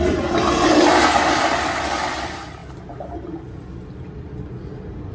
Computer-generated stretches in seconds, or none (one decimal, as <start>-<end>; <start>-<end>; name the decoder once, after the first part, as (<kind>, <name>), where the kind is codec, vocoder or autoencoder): none